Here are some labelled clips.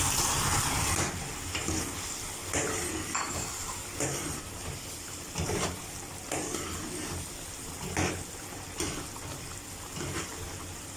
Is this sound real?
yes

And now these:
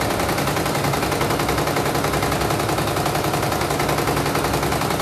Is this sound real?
yes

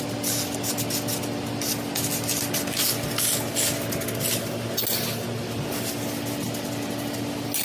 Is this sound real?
yes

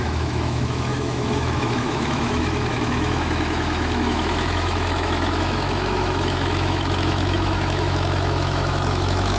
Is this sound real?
no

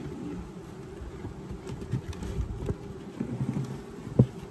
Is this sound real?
yes